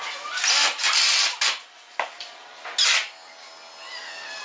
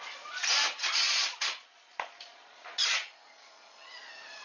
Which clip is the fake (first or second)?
second